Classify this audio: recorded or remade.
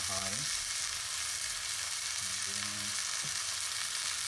recorded